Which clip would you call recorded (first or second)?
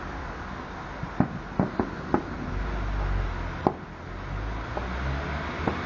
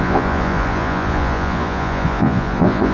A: first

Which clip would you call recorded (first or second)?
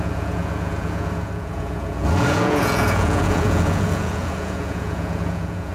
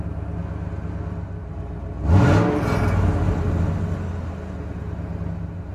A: second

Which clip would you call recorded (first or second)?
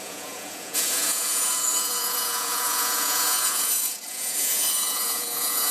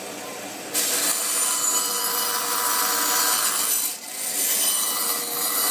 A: second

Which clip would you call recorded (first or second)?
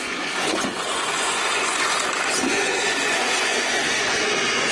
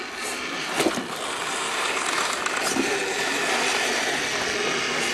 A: second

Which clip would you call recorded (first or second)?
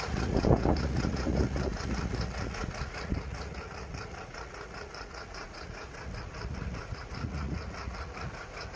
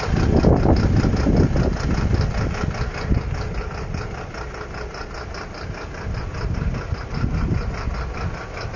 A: second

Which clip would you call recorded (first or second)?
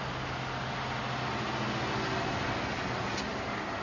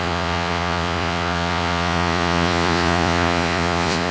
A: first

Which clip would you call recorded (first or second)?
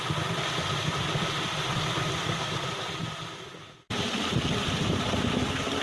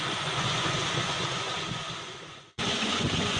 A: first